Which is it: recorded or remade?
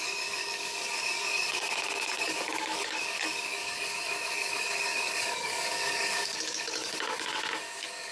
remade